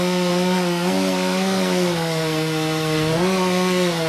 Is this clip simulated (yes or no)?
yes